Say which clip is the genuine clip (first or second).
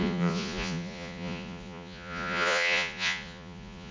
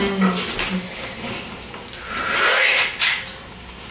second